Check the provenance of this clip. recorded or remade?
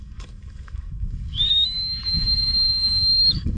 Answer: remade